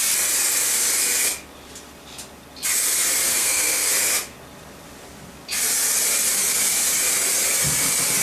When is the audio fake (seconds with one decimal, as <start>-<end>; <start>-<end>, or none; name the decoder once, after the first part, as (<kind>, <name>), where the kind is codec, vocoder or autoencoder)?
3.3-3.9 (codec, SNAC)